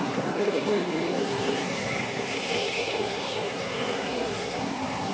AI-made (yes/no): yes